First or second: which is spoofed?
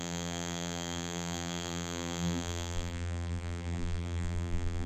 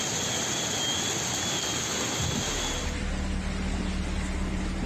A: first